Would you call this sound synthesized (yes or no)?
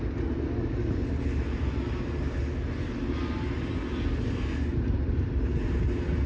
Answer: no